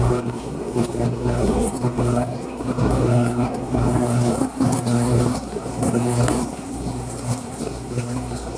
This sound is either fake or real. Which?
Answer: fake